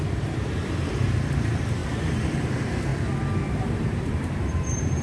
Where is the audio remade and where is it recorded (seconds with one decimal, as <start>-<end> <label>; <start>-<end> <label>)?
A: 0.0-2.9 remade; 2.9-3.5 recorded; 3.5-5.0 remade